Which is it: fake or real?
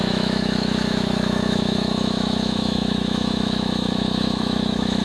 fake